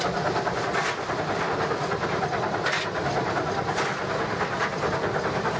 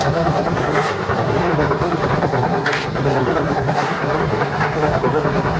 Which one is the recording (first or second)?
first